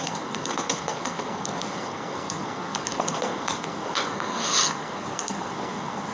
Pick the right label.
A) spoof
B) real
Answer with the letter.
A